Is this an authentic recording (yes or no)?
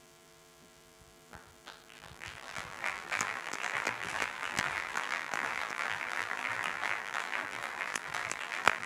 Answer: no